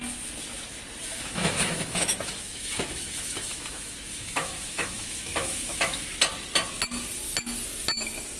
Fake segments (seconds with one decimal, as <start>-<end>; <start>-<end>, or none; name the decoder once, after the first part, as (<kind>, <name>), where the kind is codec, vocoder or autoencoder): 1.1-6.1 (autoencoder, DAC-VAE)